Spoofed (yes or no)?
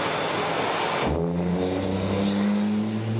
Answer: no